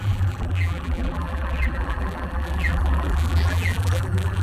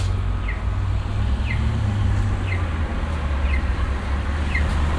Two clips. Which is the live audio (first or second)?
second